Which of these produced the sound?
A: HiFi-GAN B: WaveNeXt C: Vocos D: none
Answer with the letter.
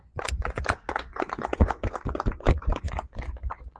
C